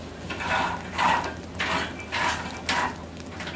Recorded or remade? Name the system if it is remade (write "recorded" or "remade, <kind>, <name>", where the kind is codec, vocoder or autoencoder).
recorded